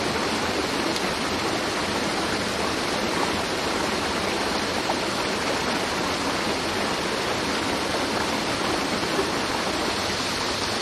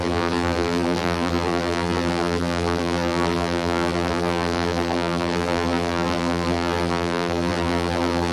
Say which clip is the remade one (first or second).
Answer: second